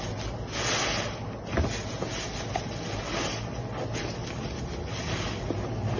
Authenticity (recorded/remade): recorded